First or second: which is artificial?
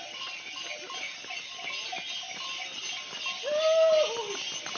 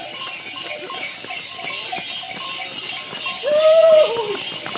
second